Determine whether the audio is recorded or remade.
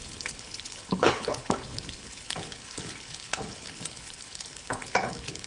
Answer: remade